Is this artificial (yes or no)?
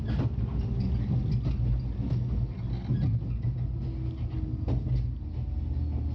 no